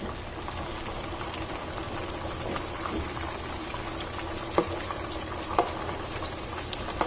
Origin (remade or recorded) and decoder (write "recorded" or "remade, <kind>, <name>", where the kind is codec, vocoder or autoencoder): recorded